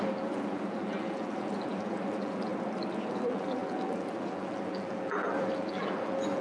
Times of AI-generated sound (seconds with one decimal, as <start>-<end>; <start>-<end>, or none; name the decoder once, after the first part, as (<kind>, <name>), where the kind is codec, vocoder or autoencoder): 0.0-2.5 (vocoder, BigVGAN v2); 3.1-6.4